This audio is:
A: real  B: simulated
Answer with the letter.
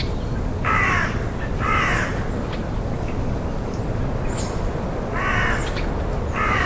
A